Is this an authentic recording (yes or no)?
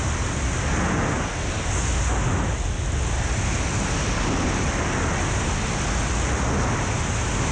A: yes